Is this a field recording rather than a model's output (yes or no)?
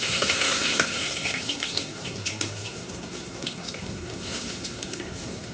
no